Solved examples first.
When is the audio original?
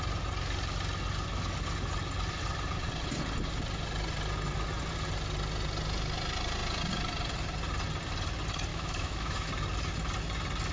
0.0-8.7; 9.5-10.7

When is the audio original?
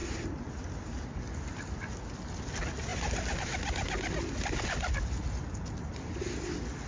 0.0-6.9